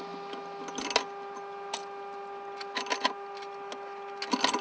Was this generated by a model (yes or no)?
no